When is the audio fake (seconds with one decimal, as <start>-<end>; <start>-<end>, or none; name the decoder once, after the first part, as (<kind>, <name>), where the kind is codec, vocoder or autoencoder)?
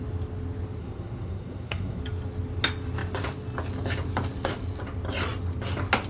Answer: 0.8-2.0 (codec, SNAC)